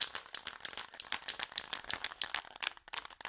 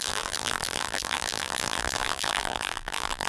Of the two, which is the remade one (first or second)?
second